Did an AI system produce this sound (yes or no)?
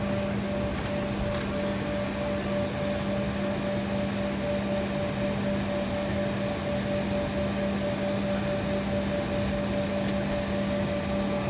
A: no